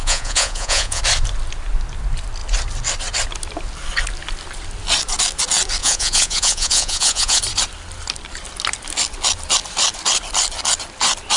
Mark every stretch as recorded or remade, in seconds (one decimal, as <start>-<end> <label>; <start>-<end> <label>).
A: 0.0-1.0 remade; 1.0-5.8 recorded; 5.8-7.4 remade; 7.4-11.4 recorded